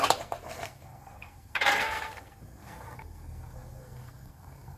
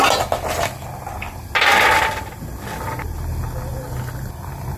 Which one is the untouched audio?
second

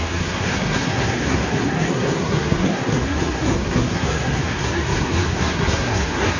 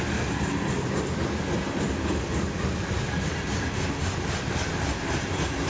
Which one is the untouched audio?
second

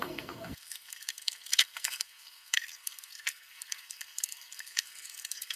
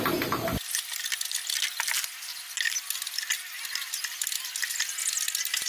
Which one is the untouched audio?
second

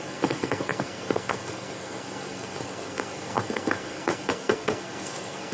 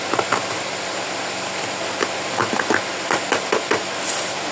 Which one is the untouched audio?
second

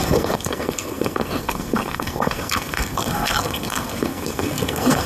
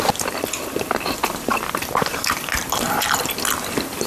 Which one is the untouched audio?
second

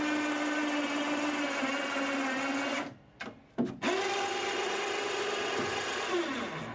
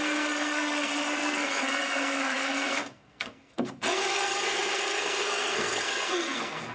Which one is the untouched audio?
first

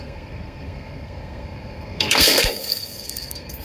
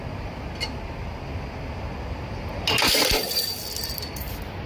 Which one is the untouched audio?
second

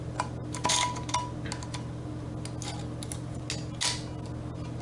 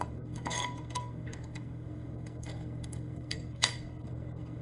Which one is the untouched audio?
first